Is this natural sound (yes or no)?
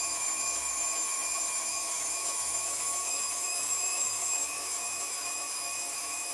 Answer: no